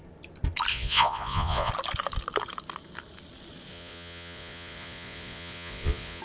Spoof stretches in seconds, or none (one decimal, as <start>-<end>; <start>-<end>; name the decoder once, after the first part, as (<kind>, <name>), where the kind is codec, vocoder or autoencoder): 0.7-1.7 (vocoder, Vocos); 3.7-6.2